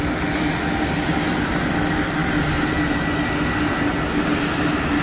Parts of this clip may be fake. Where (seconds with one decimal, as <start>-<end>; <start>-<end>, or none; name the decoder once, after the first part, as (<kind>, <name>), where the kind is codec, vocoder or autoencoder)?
none